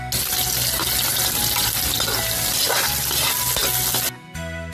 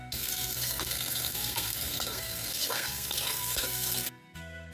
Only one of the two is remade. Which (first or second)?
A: second